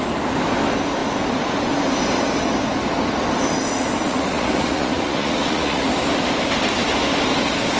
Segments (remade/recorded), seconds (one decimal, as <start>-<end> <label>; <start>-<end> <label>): 0.0-4.0 recorded; 4.0-5.9 remade; 5.9-7.8 recorded